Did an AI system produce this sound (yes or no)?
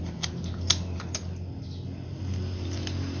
no